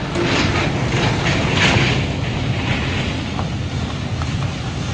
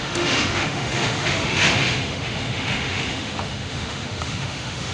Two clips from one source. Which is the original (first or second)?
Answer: first